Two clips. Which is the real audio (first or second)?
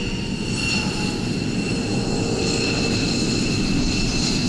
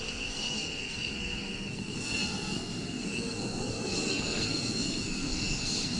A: first